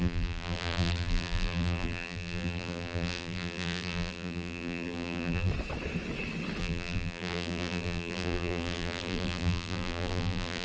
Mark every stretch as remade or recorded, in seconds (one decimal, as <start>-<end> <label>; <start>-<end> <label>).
0.0-5.5 remade; 5.5-6.6 recorded; 6.6-10.6 remade